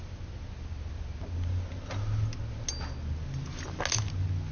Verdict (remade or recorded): recorded